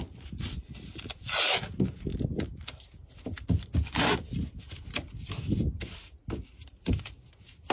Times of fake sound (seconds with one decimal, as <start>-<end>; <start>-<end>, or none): none